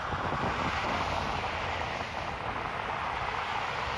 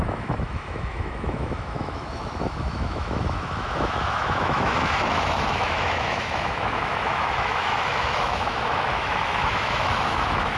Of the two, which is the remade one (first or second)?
second